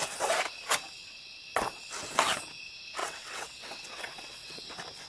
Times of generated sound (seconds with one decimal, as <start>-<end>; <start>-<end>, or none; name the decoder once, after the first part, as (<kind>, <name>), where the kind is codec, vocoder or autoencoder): 1.0-1.8 (vocoder, WaveNeXt); 3.0-4.6